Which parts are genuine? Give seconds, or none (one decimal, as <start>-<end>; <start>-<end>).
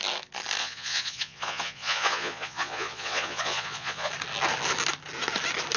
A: 0.0-0.6; 4.1-5.8